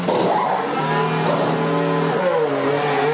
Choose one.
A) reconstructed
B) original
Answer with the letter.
B